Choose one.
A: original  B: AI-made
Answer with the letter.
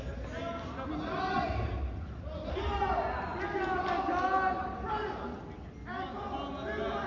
A